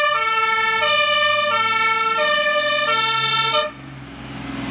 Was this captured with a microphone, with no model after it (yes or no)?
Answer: yes